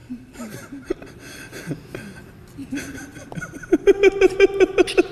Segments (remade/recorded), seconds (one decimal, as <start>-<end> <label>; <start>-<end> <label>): 0.0-1.6 remade; 1.6-5.1 recorded